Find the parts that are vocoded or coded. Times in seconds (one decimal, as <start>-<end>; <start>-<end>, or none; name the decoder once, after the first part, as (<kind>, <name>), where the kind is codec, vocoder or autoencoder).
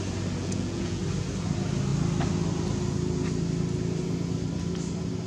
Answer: 0.4-1.0 (vocoder, Vocos)